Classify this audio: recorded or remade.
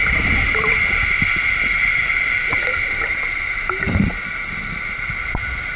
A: recorded